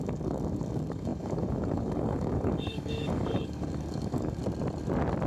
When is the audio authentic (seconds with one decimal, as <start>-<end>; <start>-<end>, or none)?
4.4-5.3